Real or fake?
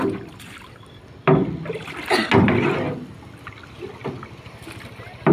real